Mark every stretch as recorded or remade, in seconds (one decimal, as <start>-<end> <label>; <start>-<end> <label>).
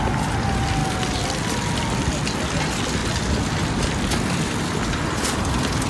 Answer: 0.0-5.9 recorded